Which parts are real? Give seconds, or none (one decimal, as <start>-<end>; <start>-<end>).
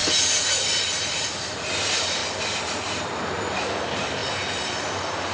0.0-0.9; 2.2-2.8; 4.2-4.7